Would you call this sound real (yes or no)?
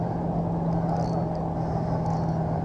yes